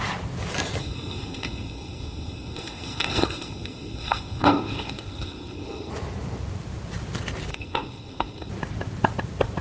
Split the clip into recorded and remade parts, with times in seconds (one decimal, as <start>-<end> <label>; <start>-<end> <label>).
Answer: 0.0-0.8 recorded; 0.8-5.9 remade; 5.9-7.5 recorded; 7.5-8.5 remade; 8.5-9.6 recorded